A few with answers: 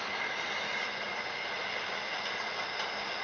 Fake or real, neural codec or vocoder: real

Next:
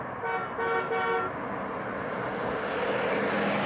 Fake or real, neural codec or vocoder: real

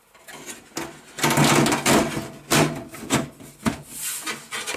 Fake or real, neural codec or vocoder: real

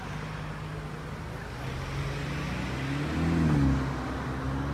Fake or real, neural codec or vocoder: real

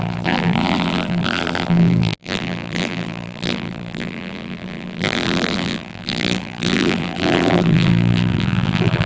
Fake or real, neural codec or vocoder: fake, vocoder, BigVGAN v2